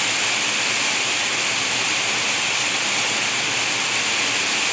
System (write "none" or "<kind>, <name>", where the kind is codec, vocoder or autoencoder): none